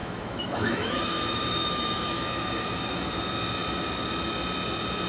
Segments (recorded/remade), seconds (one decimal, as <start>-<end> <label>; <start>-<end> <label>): 0.0-3.1 remade; 3.1-5.1 recorded